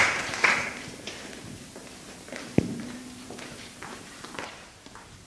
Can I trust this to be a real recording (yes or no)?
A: no